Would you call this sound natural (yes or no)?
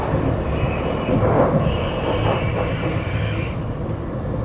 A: no